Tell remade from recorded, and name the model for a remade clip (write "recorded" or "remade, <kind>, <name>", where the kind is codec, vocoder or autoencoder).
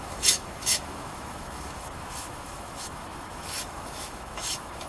remade, autoencoder, DAC-VAE